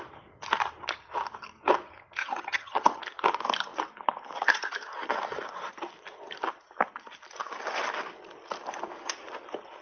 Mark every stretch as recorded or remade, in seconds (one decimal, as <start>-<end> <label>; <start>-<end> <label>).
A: 0.0-2.2 recorded; 2.2-3.0 remade; 3.0-9.8 recorded